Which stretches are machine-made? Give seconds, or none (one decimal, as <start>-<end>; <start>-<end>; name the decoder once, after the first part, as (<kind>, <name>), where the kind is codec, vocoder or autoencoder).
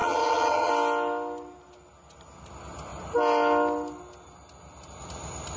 0.0-0.7 (vocoder, HiFi-GAN)